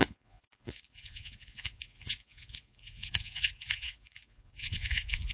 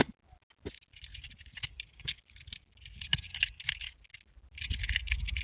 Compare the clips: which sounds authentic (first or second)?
second